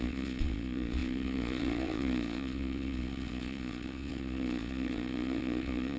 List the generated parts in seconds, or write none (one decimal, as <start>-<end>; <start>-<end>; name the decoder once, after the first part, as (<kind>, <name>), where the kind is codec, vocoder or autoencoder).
0.0-6.0 (vocoder, Vocos)

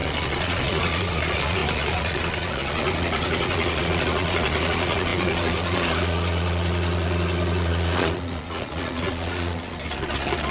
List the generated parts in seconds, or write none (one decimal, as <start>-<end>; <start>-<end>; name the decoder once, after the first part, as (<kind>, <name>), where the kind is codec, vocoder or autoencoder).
0.0-10.5 (vocoder, Vocos)

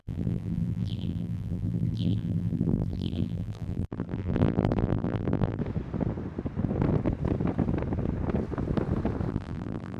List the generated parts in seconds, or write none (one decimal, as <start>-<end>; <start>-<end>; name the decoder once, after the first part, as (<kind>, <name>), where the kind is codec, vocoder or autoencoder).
0.0-5.6 (vocoder, BigVGAN v2); 9.3-10.0

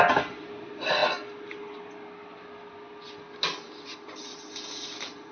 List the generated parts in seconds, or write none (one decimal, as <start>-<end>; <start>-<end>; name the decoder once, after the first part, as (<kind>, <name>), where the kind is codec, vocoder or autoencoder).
none

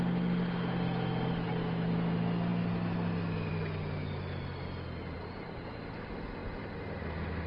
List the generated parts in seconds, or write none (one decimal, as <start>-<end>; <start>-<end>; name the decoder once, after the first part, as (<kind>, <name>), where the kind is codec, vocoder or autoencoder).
none

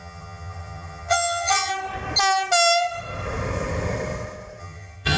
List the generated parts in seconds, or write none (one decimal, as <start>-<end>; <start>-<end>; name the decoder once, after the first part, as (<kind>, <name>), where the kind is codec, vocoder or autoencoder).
0.0-1.7 (vocoder, HiFi-GAN); 4.6-5.2